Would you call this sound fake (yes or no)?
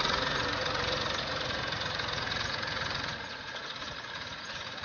yes